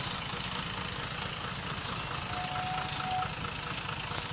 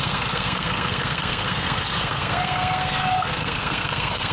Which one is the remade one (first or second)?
second